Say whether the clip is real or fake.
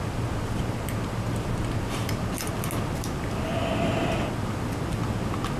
real